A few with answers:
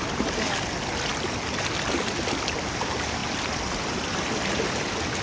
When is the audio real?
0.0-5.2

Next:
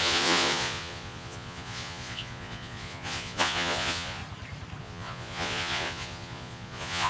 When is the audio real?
4.2-4.8

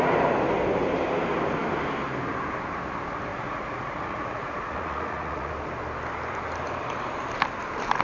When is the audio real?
0.0-3.3; 5.5-8.0

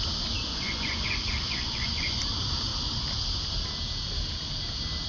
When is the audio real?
0.0-0.5; 2.2-5.1

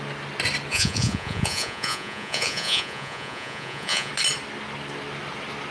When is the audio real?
0.0-0.7; 4.1-5.7

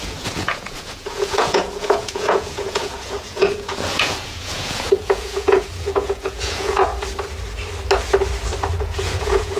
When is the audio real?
6.9-8.8

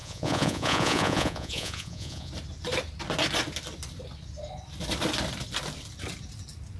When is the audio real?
2.3-6.8